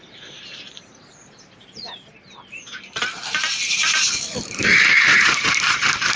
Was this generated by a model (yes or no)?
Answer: yes